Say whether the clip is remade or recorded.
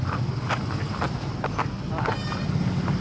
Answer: recorded